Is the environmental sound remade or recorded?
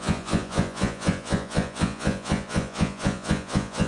remade